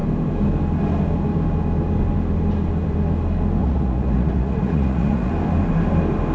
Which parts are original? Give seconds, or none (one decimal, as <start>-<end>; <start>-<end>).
0.0-3.6; 5.3-6.3